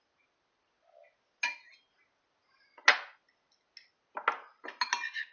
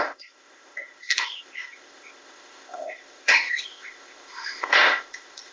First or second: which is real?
first